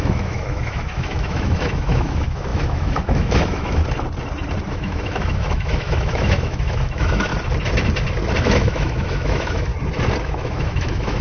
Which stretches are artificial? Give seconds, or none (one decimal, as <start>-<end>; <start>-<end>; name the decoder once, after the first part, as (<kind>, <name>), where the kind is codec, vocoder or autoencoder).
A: 0.0-3.8 (autoencoder, DAC-VAE); 4.7-7.3; 8.4-9.7; 10.2-11.2